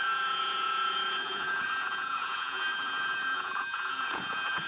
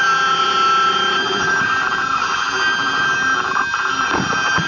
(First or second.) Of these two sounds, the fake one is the first